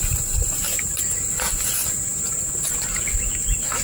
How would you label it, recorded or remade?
remade